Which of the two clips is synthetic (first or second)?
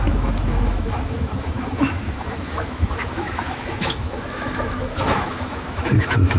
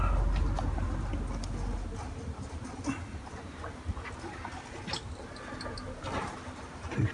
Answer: first